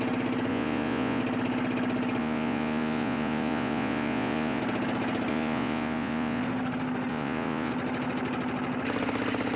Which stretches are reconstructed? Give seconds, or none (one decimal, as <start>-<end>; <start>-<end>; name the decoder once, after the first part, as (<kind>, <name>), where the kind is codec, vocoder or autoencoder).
0.5-1.2 (vocoder, Vocos); 2.2-4.6; 5.3-6.4; 7.1-7.7